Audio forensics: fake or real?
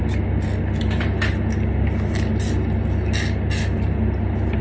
real